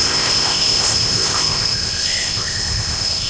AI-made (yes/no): yes